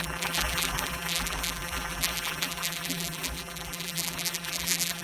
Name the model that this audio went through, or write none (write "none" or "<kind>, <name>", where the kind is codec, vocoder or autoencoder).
vocoder, BigVGAN v2